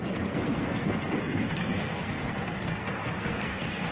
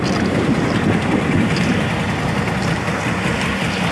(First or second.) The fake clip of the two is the first